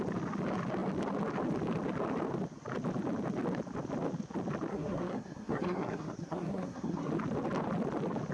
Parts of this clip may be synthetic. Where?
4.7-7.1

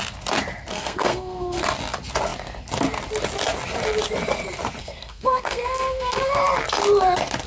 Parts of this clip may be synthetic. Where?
0.7-1.6; 4.8-6.4

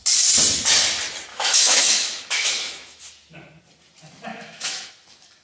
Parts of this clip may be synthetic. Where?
1.3-3.0; 4.3-4.9

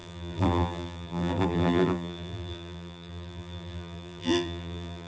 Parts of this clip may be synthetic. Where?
0.0-5.1

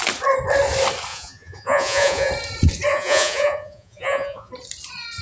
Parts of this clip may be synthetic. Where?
1.1-2.3; 2.9-4.5

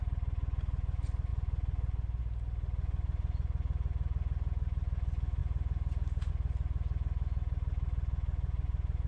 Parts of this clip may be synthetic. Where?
none